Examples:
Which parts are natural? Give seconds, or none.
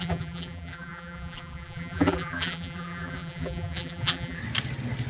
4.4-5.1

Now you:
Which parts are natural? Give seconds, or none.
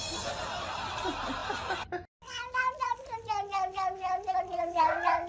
0.0-5.3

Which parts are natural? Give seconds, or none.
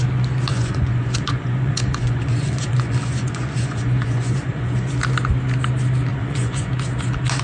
0.0-0.5; 4.9-6.1; 6.7-7.4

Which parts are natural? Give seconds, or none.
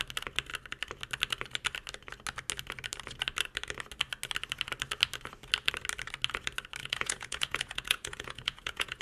0.0-6.8